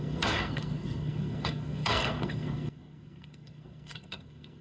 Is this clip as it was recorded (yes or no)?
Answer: no